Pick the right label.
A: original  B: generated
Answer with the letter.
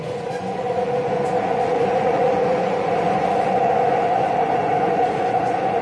B